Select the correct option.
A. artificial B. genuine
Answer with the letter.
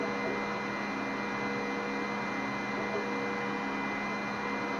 B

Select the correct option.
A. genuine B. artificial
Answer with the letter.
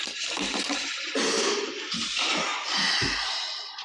A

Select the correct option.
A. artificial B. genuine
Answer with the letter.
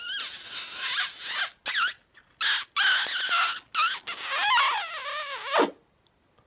B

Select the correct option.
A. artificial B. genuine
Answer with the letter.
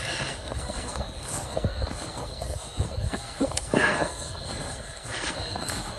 A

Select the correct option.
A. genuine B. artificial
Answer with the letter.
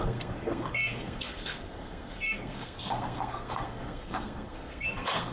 B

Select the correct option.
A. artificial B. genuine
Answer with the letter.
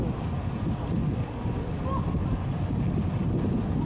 B